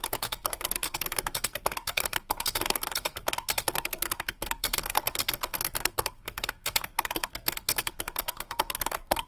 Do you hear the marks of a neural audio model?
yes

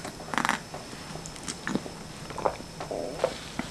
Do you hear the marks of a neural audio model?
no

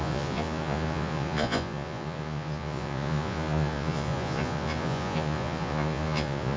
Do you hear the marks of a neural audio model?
yes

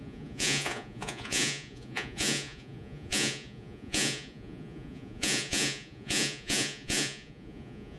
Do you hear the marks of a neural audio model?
yes